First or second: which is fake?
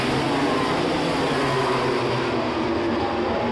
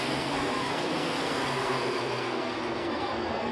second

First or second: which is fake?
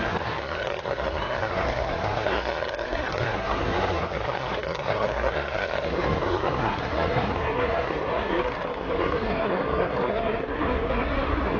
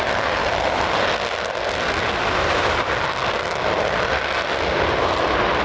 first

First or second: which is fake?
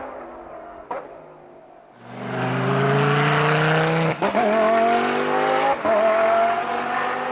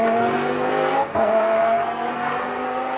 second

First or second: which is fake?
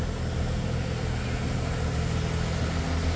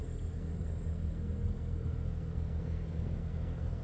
second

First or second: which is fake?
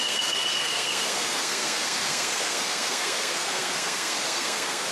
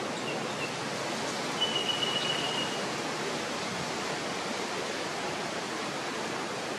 first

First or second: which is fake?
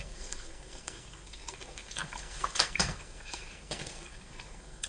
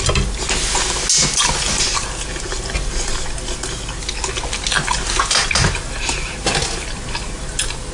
first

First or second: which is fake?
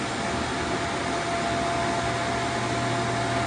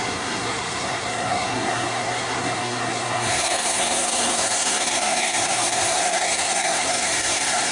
second